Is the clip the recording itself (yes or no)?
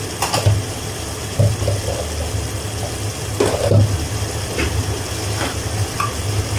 yes